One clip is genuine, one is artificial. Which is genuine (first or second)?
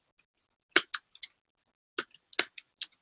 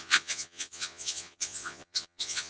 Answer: first